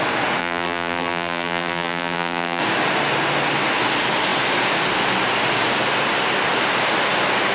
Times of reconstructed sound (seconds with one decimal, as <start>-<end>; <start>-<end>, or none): 0.4-2.6